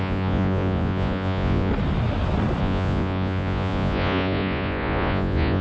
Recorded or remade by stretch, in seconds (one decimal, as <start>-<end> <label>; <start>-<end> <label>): 0.0-1.7 remade; 1.7-2.6 recorded; 2.6-5.6 remade